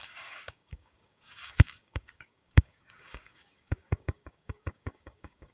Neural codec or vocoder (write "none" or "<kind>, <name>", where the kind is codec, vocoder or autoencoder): codec, DAC